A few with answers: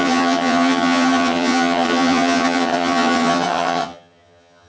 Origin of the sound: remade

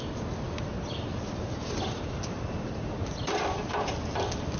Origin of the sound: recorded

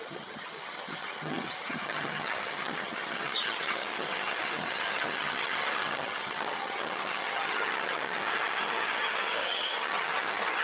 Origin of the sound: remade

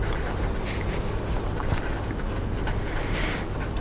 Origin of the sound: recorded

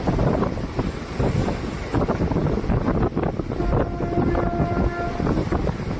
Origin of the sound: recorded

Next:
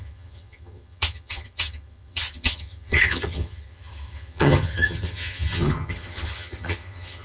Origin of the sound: remade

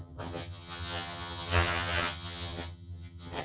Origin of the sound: remade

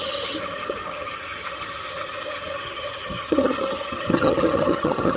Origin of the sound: remade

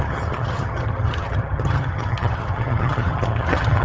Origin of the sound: remade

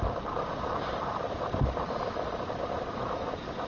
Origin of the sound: recorded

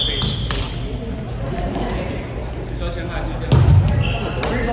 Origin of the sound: recorded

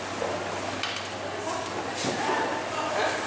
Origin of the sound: recorded